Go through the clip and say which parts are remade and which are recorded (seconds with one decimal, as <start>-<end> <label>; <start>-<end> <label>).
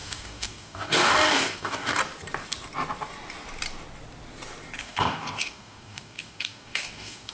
0.0-2.0 remade; 2.0-4.8 recorded; 4.8-7.3 remade